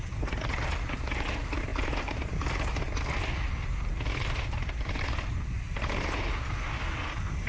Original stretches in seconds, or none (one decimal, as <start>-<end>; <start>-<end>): 0.0-7.5